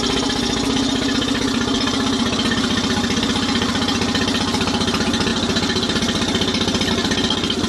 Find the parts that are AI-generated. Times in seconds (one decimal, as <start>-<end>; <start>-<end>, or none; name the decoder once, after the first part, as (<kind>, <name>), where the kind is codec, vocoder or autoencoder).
none